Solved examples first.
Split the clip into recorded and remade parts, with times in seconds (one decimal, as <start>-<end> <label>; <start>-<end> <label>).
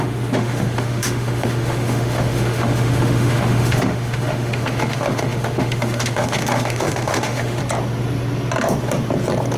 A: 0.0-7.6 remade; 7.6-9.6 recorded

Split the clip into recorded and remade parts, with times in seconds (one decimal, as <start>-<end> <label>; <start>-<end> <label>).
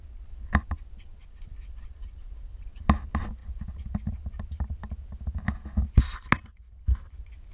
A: 0.0-2.3 remade; 2.3-7.5 recorded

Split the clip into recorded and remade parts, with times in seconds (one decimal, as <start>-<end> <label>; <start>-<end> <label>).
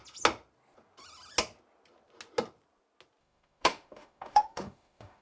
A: 0.0-3.2 recorded; 3.2-5.2 remade